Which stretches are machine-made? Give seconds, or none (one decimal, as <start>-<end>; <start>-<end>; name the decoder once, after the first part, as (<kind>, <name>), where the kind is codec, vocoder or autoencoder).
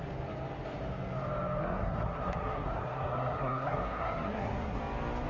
1.6-4.8 (codec, SNAC)